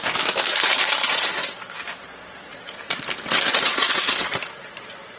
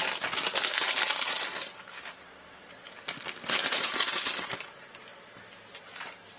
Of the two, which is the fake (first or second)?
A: first